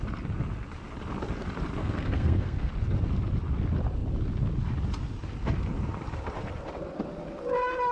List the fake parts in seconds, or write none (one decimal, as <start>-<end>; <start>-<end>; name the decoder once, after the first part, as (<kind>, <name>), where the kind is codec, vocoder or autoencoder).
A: 1.8-2.7 (codec, SNAC)